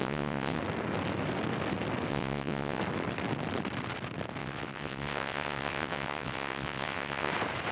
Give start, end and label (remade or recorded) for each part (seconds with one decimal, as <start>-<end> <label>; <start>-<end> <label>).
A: 0.0-0.6 remade; 0.6-2.1 recorded; 2.1-2.8 remade; 2.8-4.4 recorded; 4.4-7.3 remade; 7.3-7.7 recorded